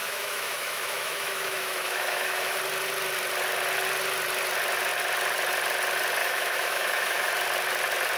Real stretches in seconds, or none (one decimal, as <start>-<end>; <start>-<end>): 2.6-6.2; 7.3-8.2